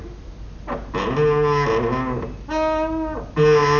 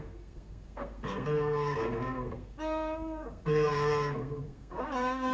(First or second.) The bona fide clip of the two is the first